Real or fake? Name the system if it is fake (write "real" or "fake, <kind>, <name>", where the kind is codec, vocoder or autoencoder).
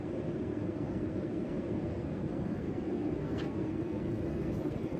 fake, codec, SNAC